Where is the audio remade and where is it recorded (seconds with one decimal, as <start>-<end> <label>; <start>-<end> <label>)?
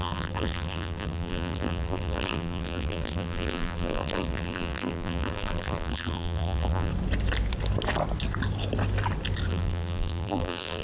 0.0-6.9 remade; 6.9-9.5 recorded; 9.5-10.8 remade